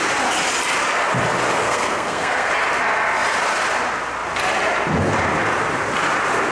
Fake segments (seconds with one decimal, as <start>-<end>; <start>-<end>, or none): 1.6-2.5